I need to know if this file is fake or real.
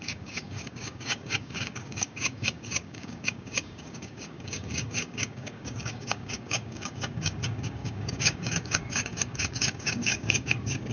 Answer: fake